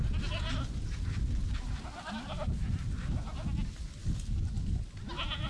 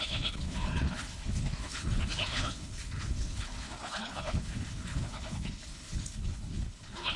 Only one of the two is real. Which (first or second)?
first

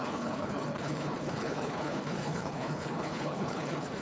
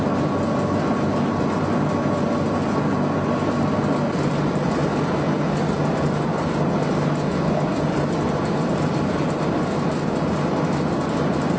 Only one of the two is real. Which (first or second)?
second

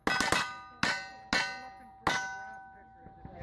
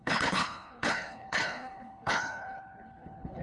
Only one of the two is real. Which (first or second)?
first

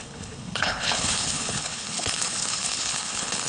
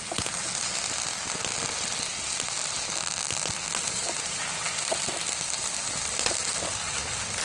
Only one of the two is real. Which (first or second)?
second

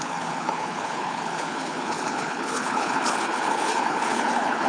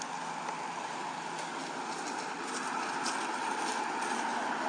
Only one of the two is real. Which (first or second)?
second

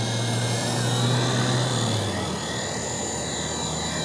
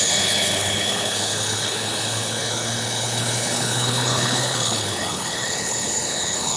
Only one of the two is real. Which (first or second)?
first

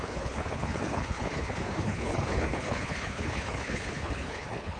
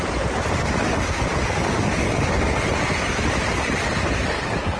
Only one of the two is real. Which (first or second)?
second